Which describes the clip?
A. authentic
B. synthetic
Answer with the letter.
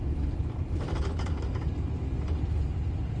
A